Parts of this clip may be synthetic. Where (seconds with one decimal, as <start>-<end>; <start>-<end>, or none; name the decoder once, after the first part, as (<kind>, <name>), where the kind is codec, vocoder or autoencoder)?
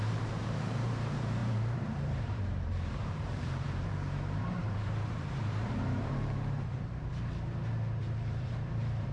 0.0-7.1 (vocoder, BigVGAN v2); 8.0-9.1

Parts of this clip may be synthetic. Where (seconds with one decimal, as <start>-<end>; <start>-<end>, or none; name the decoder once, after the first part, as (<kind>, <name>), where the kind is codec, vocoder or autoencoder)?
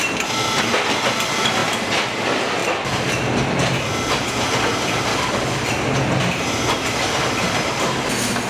5.1-5.6 (codec, DAC)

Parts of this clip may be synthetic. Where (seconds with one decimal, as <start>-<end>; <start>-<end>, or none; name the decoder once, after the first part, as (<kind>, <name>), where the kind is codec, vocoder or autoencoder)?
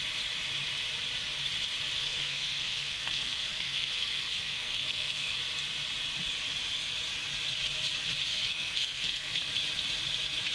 2.0-5.4 (codec, SNAC); 8.3-9.4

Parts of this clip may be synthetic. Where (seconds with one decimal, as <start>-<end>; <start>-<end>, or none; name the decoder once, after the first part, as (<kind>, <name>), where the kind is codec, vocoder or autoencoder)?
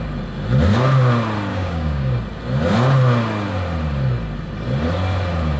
1.5-2.2 (codec, DAC)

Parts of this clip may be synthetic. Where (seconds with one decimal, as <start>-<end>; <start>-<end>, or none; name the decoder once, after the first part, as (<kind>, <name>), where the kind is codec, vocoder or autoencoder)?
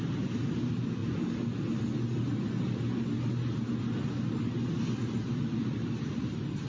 none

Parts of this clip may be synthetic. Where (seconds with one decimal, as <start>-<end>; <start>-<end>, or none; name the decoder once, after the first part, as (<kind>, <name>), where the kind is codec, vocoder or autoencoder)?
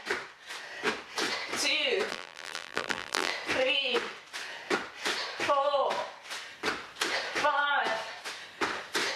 2.1-3.3 (vocoder, BigVGAN v2)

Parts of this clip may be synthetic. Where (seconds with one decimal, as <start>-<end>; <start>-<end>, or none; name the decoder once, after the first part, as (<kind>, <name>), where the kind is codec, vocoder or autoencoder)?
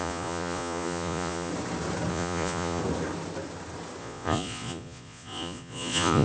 0.0-1.5 (vocoder, Vocos); 2.1-2.8; 4.0-6.2